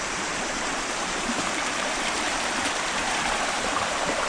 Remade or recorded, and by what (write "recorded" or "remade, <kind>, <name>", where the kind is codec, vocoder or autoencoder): remade, vocoder, BigVGAN v2